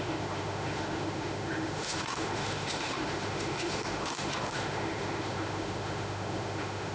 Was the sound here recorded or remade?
remade